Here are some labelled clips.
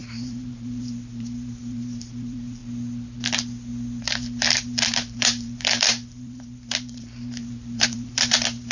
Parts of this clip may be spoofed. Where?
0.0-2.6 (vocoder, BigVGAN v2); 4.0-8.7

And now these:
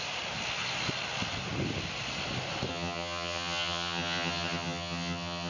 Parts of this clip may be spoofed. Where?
2.7-5.5 (vocoder, HiFi-GAN)

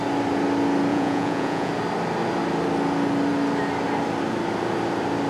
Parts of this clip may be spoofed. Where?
0.9-1.7 (vocoder, Vocos)